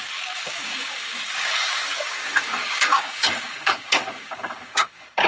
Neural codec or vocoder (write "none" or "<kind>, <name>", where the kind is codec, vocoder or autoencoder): codec, DAC